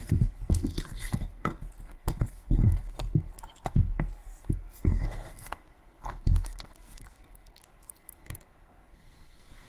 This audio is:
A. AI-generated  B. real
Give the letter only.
A